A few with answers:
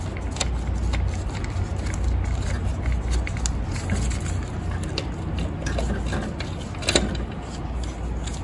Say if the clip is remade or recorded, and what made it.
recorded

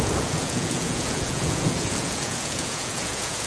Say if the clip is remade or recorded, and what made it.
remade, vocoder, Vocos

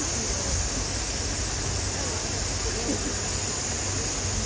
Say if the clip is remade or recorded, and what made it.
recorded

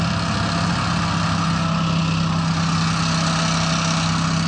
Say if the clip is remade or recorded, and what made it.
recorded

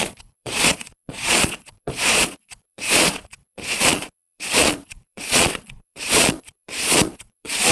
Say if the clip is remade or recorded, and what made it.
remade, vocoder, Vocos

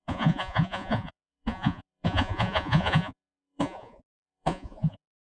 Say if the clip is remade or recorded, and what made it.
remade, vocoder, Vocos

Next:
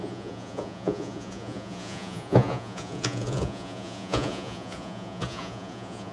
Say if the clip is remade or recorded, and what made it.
remade, vocoder, Vocos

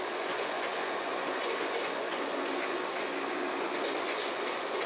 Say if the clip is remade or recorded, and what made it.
remade, vocoder, Vocos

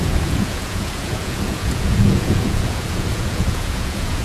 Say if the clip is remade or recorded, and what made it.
remade, vocoder, Vocos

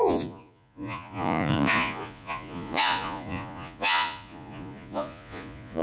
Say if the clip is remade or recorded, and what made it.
remade, vocoder, Vocos